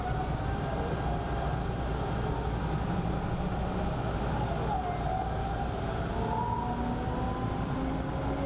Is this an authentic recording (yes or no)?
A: yes